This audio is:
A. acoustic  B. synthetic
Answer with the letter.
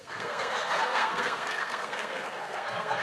B